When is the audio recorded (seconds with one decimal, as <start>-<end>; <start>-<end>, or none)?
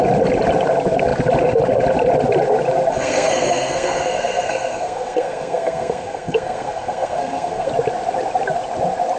0.0-3.0; 7.7-9.2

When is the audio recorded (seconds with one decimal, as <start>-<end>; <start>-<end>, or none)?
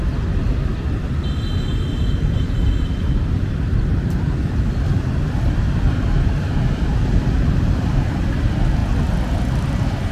0.0-10.1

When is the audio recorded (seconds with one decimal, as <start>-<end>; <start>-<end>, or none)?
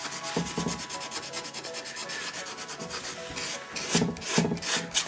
0.0-5.1